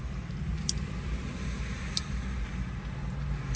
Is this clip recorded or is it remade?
recorded